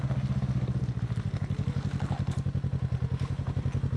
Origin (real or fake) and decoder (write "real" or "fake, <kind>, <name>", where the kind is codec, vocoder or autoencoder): real